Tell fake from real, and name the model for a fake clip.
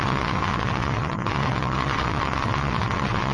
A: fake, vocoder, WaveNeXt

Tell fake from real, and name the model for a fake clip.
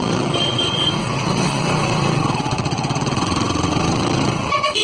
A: fake, vocoder, WaveNeXt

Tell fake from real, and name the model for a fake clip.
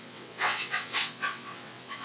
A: fake, vocoder, WaveNeXt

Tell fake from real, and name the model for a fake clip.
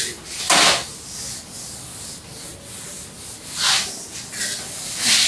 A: real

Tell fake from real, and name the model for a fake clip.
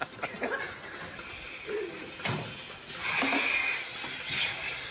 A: real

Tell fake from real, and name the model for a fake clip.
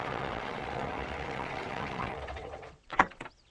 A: fake, vocoder, WaveNeXt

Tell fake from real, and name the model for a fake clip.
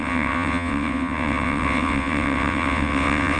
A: fake, vocoder, WaveNeXt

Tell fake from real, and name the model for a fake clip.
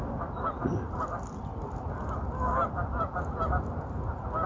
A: real